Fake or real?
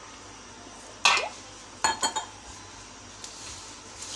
real